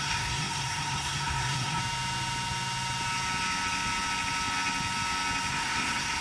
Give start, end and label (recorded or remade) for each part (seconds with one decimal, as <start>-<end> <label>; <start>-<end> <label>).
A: 0.0-1.8 remade; 1.8-5.5 recorded; 5.5-6.2 remade